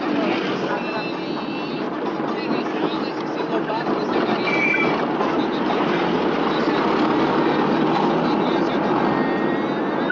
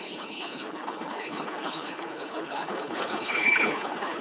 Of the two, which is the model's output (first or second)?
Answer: second